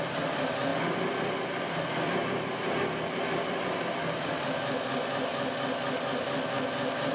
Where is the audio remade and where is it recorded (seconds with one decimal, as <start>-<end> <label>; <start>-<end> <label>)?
0.0-7.1 recorded